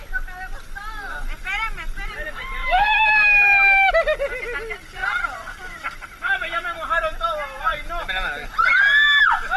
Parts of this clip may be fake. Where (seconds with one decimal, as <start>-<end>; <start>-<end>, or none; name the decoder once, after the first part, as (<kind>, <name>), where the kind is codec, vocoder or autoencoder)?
2.6-3.9 (autoencoder, DAC-VAE)